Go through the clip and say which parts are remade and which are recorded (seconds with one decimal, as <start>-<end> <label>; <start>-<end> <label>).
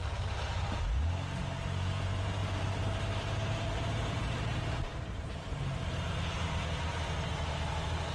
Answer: 0.0-2.4 recorded; 2.4-5.4 remade; 5.4-8.1 recorded